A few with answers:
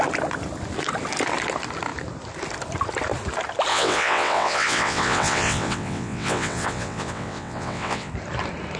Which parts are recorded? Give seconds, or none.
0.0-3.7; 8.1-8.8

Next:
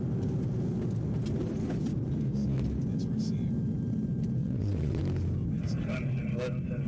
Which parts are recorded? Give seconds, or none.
0.0-4.4; 5.0-6.9

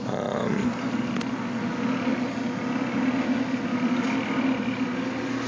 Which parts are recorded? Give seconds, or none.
0.0-5.5

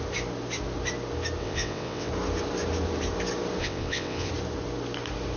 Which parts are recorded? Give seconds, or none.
0.0-1.4; 2.1-3.6; 4.3-5.4

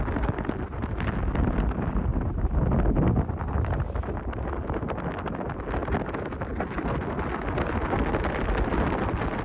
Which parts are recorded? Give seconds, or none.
0.0-9.4

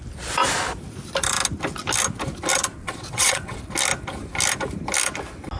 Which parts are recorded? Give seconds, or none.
0.0-2.8; 3.6-5.6

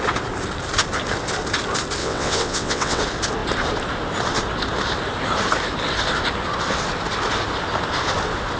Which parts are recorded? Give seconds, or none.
0.0-2.0; 3.0-8.6

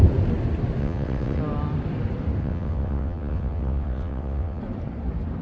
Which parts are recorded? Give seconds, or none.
0.0-0.8; 1.4-2.4; 4.6-5.4